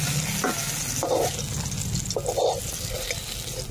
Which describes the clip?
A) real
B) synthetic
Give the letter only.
A